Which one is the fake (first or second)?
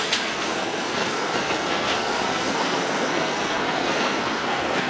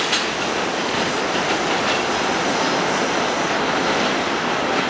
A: first